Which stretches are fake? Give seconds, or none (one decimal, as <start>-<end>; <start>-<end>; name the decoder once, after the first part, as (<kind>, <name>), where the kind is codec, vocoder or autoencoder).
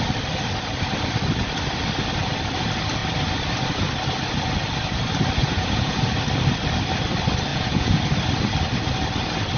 5.4-6.0 (vocoder, Vocos); 7.5-8.0